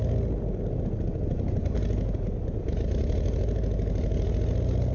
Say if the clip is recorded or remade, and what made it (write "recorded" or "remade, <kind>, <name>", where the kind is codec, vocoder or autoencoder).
recorded